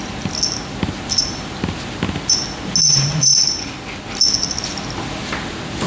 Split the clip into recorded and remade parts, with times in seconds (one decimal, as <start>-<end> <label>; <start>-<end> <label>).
0.0-5.9 recorded